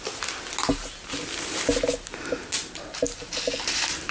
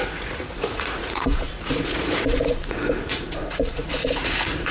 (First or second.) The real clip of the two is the first